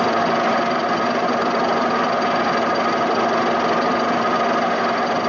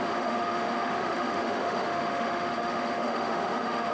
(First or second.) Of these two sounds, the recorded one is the first